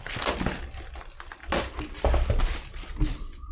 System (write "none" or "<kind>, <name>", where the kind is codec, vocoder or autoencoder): none